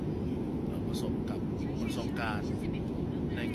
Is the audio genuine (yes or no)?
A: yes